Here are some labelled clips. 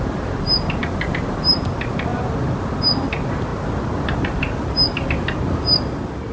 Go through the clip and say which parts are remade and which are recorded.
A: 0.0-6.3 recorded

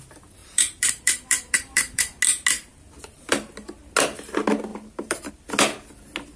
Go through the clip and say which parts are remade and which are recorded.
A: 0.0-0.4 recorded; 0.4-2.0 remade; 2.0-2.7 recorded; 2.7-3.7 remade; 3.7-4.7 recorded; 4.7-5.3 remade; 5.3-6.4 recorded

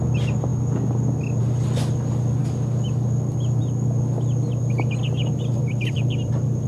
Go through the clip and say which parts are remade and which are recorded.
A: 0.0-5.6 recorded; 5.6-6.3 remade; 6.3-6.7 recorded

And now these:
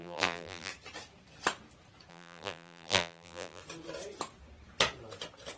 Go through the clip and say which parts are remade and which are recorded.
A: 0.0-0.7 remade; 0.7-2.1 recorded; 2.1-3.6 remade; 3.6-5.6 recorded

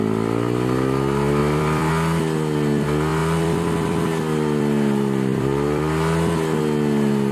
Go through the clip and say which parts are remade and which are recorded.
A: 0.0-1.4 recorded; 1.4-1.9 remade; 1.9-3.2 recorded; 3.2-6.6 remade; 6.6-7.3 recorded

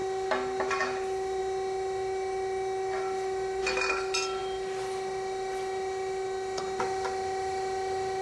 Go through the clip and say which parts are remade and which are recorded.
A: 0.0-8.2 recorded